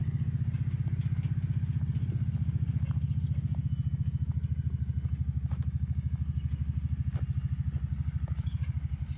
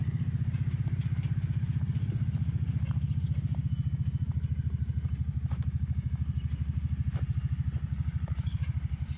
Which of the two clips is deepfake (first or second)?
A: second